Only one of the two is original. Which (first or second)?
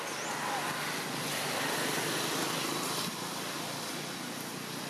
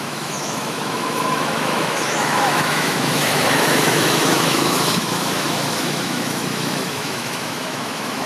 first